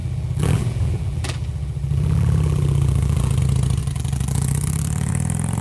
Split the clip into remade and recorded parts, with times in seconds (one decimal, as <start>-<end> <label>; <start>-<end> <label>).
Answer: 0.0-3.4 remade; 3.4-3.8 recorded; 3.8-5.1 remade; 5.1-5.6 recorded